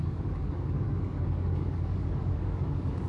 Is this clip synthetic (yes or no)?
yes